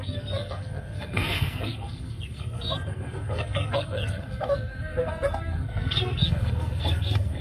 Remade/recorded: remade